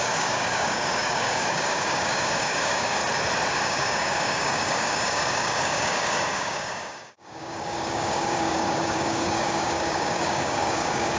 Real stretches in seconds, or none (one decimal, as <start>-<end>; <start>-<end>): 3.0-3.5